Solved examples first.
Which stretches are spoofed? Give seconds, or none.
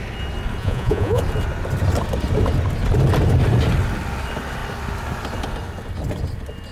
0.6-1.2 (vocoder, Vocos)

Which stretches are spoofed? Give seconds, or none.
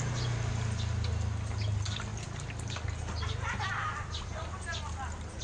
none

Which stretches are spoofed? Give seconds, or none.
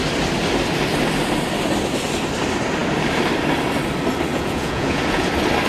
4.3-5.3 (vocoder, Vocos)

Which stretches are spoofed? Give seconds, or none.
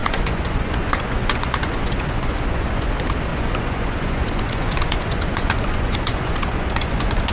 0.0-2.9 (vocoder, Vocos); 3.3-7.3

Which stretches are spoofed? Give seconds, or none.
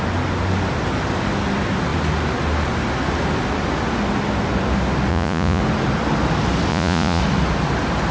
5.1-5.6 (vocoder, Vocos); 6.7-7.2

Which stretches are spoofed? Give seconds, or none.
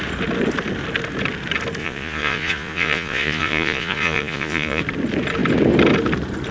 1.8-4.8 (vocoder, Vocos)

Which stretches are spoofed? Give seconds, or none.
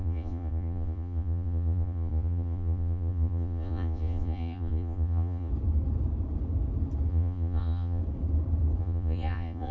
0.0-5.5 (vocoder, Vocos); 7.1-8.0; 8.8-9.7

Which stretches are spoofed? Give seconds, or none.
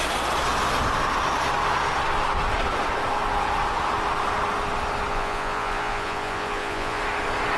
5.1-7.0 (vocoder, Vocos)